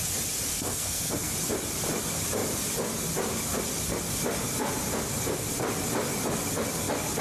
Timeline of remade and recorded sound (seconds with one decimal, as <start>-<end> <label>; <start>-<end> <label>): 0.0-0.5 recorded; 0.5-1.3 remade; 1.3-7.2 recorded